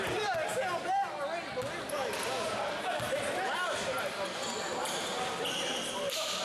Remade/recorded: recorded